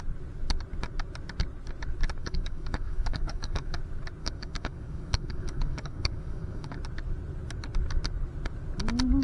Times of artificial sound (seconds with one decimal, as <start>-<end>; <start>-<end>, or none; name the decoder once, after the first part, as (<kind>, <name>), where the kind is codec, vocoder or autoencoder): 2.2-3.8 (codec, DAC); 4.2-6.8